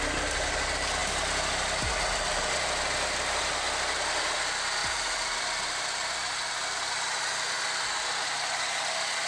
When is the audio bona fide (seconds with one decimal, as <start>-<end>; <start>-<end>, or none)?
0.0-9.3